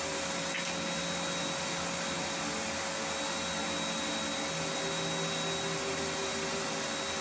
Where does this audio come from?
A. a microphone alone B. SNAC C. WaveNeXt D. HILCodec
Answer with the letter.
A